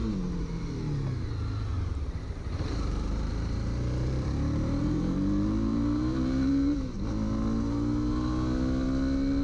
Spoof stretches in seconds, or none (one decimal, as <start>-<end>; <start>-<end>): 1.7-6.9